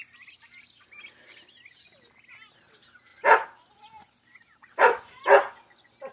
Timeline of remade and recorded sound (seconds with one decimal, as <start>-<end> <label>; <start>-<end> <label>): 0.0-6.1 recorded